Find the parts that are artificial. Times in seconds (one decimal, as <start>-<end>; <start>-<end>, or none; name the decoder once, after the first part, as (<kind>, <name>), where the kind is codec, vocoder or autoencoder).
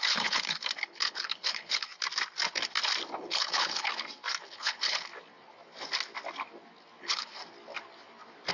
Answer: 0.0-1.9 (codec, HILCodec); 3.2-3.9; 4.4-5.1; 7.0-7.4